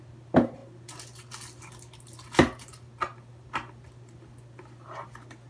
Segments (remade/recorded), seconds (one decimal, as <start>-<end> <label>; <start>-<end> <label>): 0.0-5.5 recorded